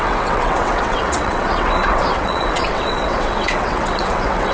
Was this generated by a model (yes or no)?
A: yes